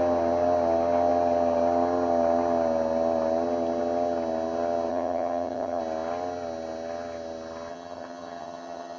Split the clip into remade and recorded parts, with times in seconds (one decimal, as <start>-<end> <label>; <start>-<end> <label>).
0.0-4.9 recorded; 4.9-5.8 remade; 5.8-7.7 recorded; 7.7-9.0 remade